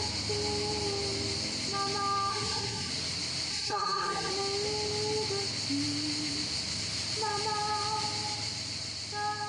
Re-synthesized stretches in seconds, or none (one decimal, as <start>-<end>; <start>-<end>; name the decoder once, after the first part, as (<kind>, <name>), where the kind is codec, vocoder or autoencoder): 2.3-2.9 (codec, SNAC); 3.5-4.3